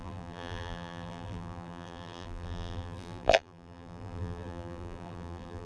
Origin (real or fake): fake